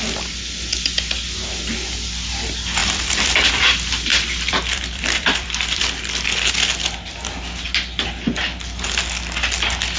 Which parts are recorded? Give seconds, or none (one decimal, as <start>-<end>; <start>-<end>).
0.0-2.8; 3.5-4.1; 5.8-10.0